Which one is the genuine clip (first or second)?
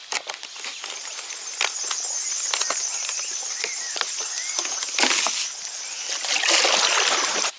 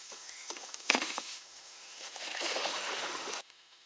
first